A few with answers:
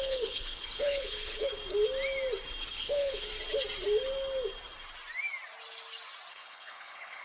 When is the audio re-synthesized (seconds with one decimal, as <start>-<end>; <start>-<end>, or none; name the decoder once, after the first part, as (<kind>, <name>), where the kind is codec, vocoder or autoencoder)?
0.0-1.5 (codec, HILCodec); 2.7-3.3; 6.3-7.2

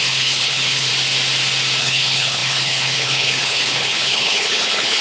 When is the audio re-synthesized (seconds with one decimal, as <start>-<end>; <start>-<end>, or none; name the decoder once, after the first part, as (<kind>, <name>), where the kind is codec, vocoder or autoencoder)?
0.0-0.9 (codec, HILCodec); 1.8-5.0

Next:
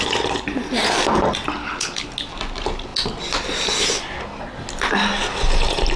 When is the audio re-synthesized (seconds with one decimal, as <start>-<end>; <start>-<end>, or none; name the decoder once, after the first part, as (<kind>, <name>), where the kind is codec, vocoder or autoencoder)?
1.6-2.1 (codec, HILCodec)

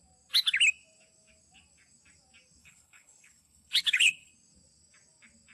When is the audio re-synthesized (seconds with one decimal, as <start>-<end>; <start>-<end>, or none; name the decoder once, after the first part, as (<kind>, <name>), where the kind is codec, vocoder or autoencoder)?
2.6-4.3 (codec, HILCodec)